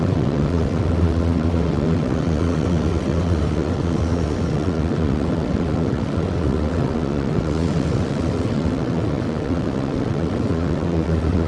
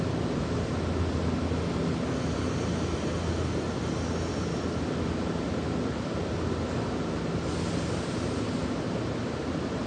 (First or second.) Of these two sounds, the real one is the second